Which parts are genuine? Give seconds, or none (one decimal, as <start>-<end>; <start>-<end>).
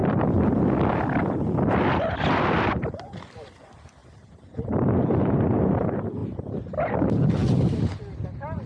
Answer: 2.4-4.0; 5.7-6.2; 7.0-8.7